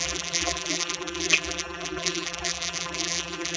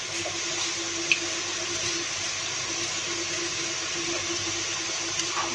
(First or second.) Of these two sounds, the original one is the second